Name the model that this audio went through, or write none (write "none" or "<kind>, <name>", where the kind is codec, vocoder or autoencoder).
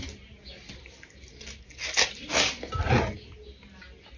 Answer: none